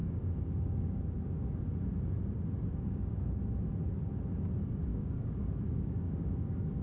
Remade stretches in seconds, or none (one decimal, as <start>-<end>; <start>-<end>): 0.0-1.6; 2.7-3.4; 4.9-6.8